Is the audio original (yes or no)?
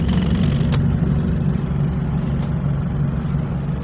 yes